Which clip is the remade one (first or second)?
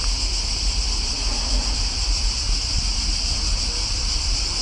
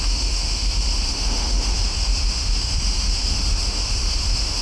second